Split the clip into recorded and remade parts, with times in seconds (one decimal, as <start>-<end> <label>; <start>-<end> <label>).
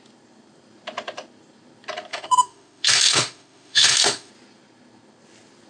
0.0-2.1 recorded; 2.1-4.3 remade; 4.3-5.7 recorded